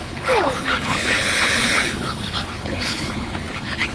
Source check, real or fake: fake